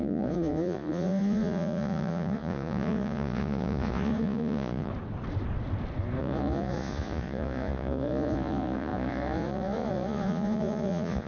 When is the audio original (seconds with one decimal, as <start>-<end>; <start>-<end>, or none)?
4.9-6.2